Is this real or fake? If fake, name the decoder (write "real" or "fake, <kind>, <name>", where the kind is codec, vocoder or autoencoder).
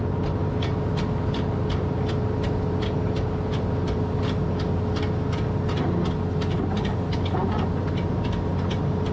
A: real